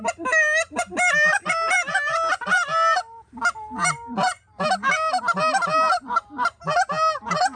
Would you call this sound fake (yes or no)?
no